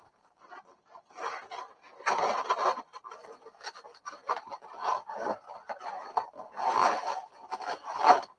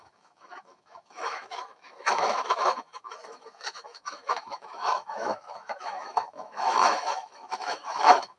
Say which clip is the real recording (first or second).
first